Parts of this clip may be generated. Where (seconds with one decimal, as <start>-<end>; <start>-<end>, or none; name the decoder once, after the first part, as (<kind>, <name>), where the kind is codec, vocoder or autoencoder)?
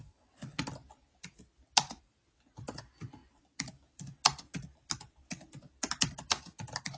0.0-0.6 (vocoder, WaveNeXt)